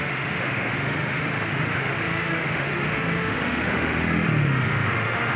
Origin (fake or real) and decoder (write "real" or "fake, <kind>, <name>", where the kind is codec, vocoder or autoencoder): fake, autoencoder, DAC-VAE